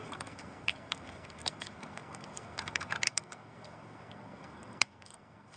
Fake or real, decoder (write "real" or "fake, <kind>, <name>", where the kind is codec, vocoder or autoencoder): fake, codec, SNAC